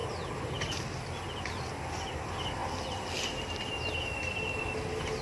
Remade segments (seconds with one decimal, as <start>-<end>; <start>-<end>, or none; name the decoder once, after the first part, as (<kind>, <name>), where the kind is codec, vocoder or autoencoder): none